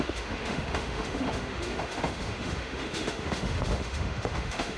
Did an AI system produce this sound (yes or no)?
yes